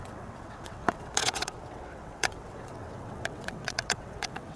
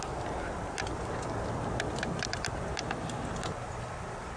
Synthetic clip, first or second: first